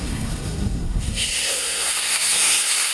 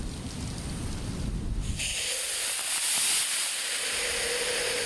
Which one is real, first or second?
second